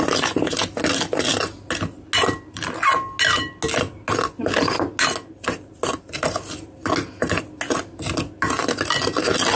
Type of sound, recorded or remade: recorded